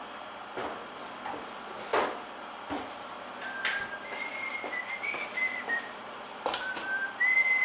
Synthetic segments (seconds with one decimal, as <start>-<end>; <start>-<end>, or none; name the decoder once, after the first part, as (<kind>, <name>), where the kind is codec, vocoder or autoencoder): none